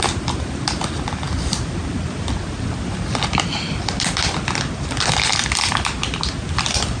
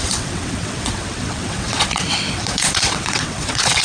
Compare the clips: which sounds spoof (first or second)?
second